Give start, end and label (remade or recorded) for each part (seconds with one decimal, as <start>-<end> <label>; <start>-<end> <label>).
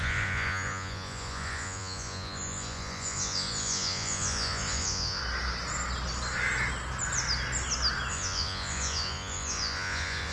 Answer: 0.0-5.2 remade; 5.2-8.1 recorded; 8.1-10.3 remade